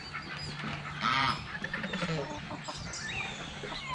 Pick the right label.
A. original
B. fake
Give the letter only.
A